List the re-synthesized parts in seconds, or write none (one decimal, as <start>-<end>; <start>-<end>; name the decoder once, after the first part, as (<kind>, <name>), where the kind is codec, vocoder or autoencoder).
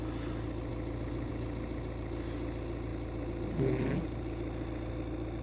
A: none